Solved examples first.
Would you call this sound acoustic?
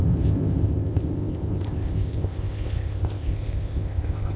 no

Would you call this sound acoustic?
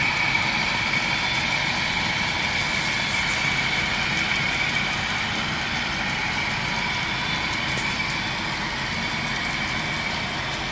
yes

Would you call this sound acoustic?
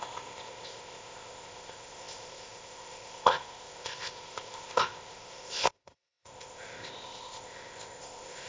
no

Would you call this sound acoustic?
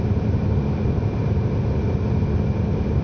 yes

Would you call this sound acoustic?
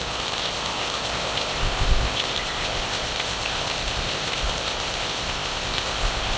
no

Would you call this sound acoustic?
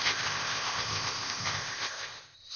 no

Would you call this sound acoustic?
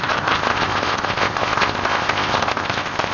no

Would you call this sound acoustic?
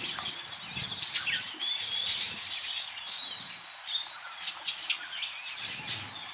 yes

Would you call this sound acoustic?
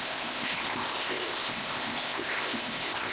no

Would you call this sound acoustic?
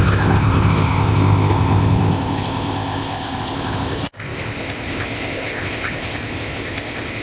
no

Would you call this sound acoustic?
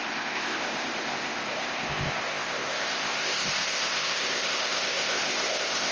no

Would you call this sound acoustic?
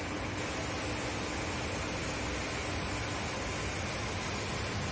yes